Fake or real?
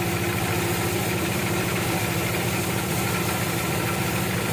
fake